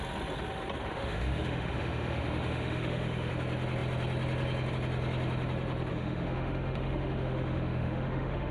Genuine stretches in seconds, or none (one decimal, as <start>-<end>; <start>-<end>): 0.0-0.9; 3.3-5.9